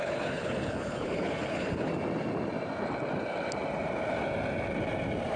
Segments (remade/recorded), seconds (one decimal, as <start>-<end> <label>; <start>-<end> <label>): 0.0-1.9 remade; 1.9-5.4 recorded